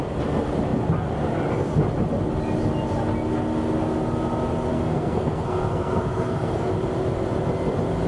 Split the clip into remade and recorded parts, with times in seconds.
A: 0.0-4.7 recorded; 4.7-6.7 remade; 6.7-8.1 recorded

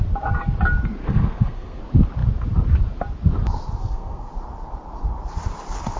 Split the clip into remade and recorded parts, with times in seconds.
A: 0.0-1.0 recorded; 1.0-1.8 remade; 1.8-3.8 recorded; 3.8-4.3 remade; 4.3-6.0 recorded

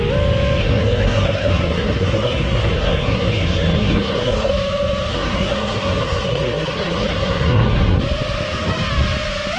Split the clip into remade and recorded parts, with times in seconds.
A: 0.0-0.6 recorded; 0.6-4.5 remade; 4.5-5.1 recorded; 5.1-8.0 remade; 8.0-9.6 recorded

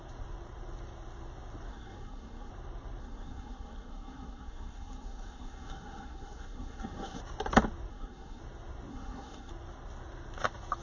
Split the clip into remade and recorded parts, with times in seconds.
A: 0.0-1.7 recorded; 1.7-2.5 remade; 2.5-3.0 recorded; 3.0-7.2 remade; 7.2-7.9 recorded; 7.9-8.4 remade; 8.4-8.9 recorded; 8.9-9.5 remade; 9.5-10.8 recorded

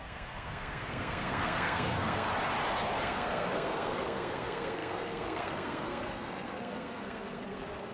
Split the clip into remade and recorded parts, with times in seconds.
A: 0.0-2.3 remade; 2.3-3.0 recorded; 3.0-7.9 remade

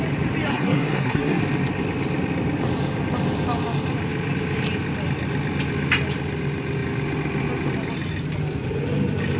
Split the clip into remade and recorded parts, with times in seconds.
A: 0.0-0.5 recorded; 0.5-1.4 remade; 1.4-9.4 recorded